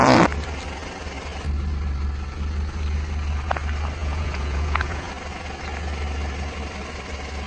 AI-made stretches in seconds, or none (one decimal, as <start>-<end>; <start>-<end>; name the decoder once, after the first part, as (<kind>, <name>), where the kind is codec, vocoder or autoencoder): 4.0-5.1 (vocoder, Vocos)